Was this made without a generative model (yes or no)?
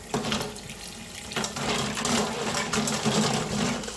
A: yes